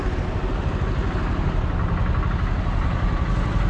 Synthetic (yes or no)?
no